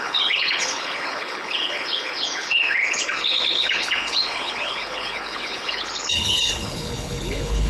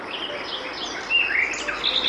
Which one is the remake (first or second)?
first